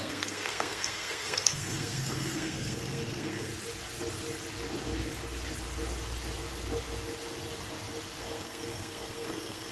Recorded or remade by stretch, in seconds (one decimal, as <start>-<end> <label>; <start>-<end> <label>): 0.0-3.5 remade; 3.5-8.2 recorded; 8.2-9.7 remade